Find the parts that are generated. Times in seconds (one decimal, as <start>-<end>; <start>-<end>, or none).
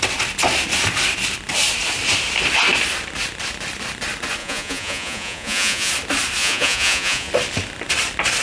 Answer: 4.4-5.9; 6.4-7.3